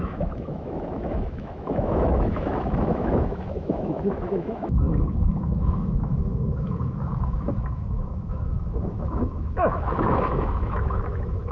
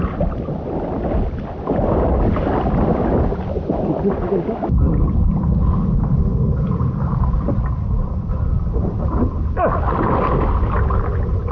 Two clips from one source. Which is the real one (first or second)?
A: second